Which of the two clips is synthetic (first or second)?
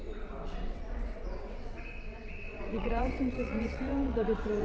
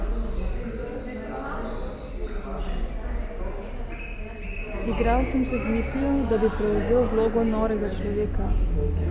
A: first